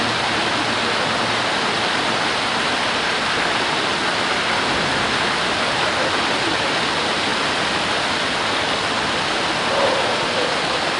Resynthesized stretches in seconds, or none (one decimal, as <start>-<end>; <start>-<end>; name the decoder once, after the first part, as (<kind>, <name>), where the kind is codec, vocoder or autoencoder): none

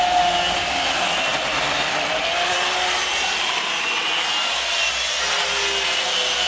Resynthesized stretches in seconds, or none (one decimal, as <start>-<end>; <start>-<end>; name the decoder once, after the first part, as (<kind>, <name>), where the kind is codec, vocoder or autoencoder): 1.3-2.2 (vocoder, BigVGAN v2)

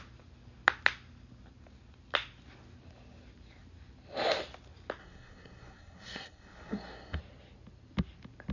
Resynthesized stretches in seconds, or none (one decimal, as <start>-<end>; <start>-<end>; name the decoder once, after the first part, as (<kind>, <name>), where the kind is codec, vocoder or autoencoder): 5.0-7.2 (codec, SNAC)

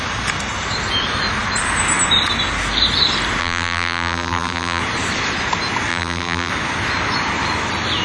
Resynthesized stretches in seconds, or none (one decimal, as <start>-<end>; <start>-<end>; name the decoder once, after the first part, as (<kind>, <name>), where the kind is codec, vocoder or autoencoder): 3.4-4.8 (vocoder, BigVGAN v2); 5.9-6.5

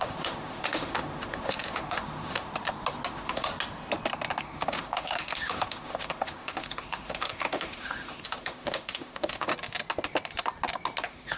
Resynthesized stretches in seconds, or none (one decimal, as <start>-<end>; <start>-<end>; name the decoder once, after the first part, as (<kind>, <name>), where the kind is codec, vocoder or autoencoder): 0.0-2.5 (autoencoder, DAC-VAE); 3.1-3.5; 4.4-9.5; 11.0-11.4

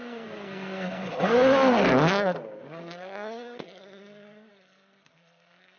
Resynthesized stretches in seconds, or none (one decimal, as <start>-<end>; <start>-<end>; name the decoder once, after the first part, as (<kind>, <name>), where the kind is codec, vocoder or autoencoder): 0.0-5.8 (codec, SNAC)

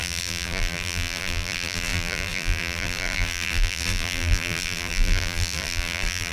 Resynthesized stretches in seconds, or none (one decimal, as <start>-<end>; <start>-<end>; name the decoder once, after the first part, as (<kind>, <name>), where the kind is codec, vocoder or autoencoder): 0.0-6.3 (vocoder, BigVGAN v2)